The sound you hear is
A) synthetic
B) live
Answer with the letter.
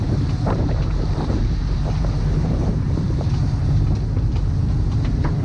A